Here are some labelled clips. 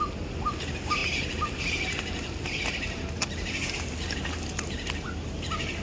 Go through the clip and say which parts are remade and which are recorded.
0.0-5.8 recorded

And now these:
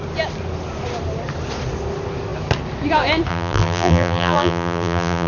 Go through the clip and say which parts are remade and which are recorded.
0.0-3.3 recorded; 3.3-5.3 remade

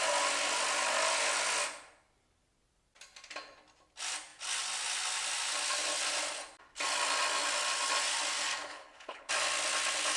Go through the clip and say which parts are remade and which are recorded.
0.0-8.7 recorded; 8.7-9.3 remade; 9.3-10.2 recorded